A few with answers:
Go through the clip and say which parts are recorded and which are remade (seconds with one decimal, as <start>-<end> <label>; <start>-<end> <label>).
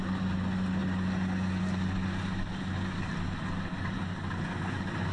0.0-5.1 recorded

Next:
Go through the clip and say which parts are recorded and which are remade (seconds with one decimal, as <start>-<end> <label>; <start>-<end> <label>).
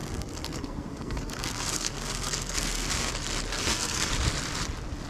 0.0-3.1 remade; 3.1-3.5 recorded; 3.5-4.1 remade; 4.1-5.1 recorded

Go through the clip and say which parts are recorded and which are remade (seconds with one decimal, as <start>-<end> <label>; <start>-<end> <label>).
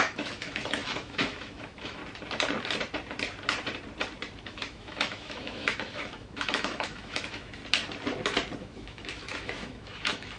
0.0-2.0 remade; 2.0-4.4 recorded; 4.4-7.6 remade; 7.6-8.6 recorded; 8.6-10.4 remade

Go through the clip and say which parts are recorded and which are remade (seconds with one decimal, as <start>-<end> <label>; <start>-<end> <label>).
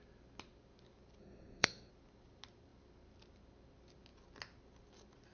0.0-1.2 recorded; 1.2-1.9 remade; 1.9-5.3 recorded